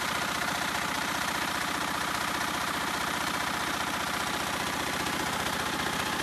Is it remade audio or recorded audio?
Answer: remade